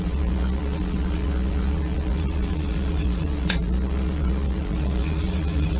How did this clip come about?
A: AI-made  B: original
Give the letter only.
A